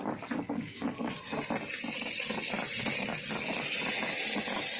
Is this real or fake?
real